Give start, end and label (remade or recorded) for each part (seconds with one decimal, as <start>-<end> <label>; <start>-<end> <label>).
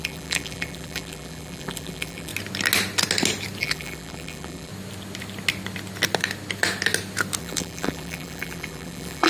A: 0.0-2.3 remade; 2.3-3.6 recorded; 3.6-4.7 remade; 4.7-7.4 recorded; 7.4-9.3 remade